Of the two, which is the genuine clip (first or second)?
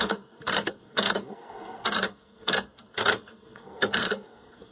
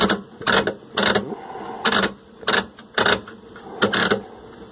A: second